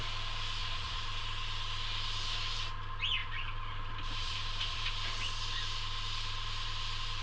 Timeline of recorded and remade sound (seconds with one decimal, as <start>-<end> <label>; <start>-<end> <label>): 0.0-0.6 recorded; 0.6-1.2 remade; 1.2-3.2 recorded; 3.2-4.9 remade; 4.9-7.2 recorded